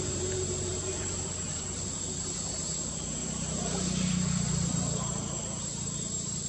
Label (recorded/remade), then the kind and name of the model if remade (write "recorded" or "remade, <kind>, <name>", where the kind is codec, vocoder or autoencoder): remade, vocoder, BigVGAN v2